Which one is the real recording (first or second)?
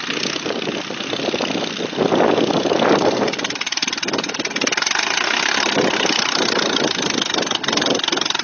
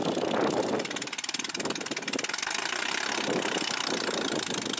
second